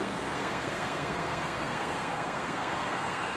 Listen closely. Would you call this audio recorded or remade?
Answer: remade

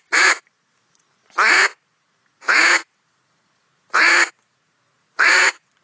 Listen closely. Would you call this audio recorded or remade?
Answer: remade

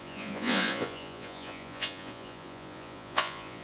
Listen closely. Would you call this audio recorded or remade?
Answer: remade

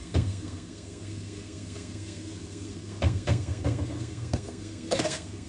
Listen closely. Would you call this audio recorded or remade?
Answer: remade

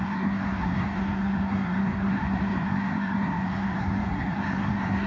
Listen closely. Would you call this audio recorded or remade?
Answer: remade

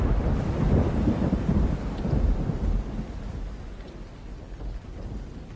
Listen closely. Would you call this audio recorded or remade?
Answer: recorded